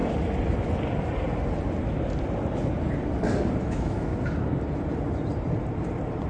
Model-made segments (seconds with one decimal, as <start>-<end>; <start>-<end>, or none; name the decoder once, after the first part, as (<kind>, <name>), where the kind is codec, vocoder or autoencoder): 3.6-4.1 (autoencoder, DAC-VAE)